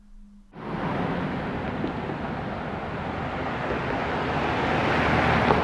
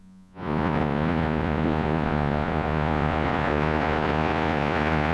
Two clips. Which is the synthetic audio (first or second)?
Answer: second